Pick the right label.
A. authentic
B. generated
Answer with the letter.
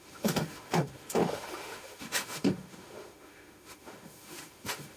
B